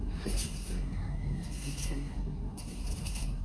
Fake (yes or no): yes